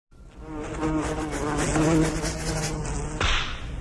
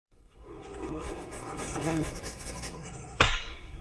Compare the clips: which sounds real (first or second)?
first